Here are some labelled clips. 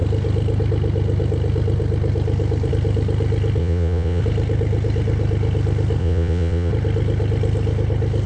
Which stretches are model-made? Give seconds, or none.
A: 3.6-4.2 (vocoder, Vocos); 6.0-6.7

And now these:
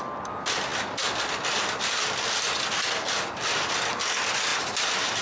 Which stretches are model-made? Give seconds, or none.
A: none

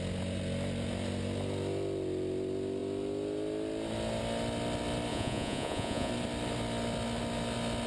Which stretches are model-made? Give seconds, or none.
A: 5.1-6.1 (vocoder, Vocos)

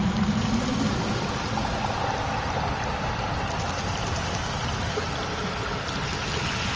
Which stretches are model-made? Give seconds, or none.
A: none

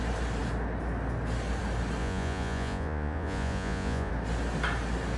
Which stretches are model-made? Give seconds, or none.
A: 2.0-4.1 (vocoder, Vocos)